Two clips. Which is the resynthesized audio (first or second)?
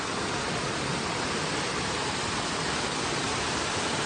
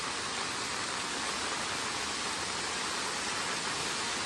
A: first